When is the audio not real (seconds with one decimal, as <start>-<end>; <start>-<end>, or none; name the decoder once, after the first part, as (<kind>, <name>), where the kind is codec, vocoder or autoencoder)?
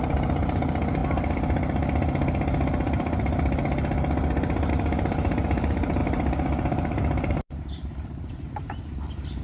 0.0-1.0 (vocoder, BigVGAN v2); 4.7-9.4